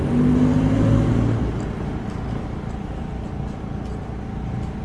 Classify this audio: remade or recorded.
recorded